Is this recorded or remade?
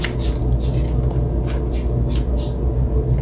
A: recorded